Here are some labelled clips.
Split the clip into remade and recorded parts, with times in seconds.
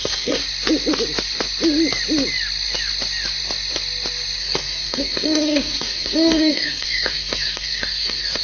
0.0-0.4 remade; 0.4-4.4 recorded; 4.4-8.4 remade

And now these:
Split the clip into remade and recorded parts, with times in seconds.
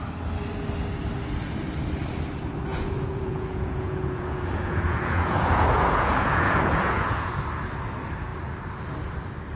0.0-2.7 recorded; 2.7-7.3 remade; 7.3-9.6 recorded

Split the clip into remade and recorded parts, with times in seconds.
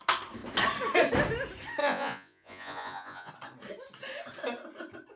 0.0-1.8 recorded; 1.8-3.3 remade; 3.3-5.2 recorded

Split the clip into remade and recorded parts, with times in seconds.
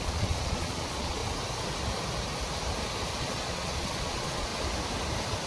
0.0-1.2 remade; 1.2-3.2 recorded; 3.2-4.5 remade; 4.5-5.5 recorded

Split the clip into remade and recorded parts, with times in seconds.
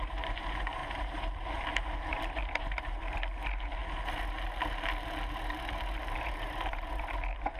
0.0-3.8 remade; 3.8-6.1 recorded; 6.1-7.6 remade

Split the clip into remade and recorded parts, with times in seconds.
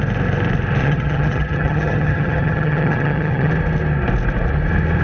0.0-0.8 recorded; 0.8-3.5 remade; 3.5-5.0 recorded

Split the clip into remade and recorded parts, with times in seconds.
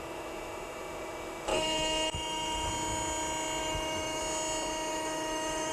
0.0-1.5 recorded; 1.5-2.7 remade; 2.7-3.6 recorded; 3.6-4.2 remade; 4.2-4.9 recorded; 4.9-5.7 remade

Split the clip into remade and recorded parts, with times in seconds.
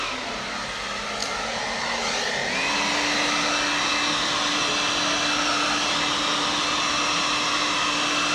0.0-8.3 recorded